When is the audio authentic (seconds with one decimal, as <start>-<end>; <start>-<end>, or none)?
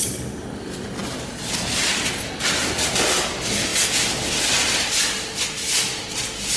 0.0-6.6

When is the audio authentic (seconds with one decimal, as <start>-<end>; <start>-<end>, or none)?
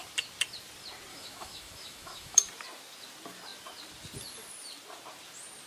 0.0-1.1; 2.5-5.7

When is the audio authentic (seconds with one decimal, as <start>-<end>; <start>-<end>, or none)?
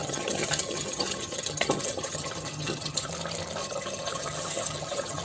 3.1-3.6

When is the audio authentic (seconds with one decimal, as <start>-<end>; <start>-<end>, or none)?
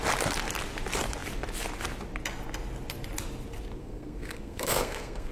0.0-3.8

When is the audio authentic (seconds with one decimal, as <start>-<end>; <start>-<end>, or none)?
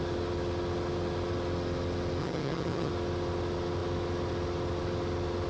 0.0-2.2; 2.9-5.5